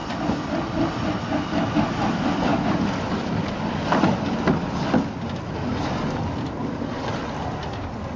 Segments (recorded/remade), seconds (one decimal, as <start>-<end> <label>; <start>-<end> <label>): 0.0-0.9 remade; 0.9-2.5 recorded; 2.5-4.0 remade; 4.0-6.6 recorded; 6.6-7.3 remade; 7.3-8.2 recorded